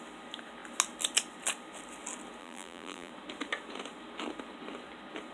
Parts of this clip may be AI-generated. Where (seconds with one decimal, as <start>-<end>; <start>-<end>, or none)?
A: 2.4-3.1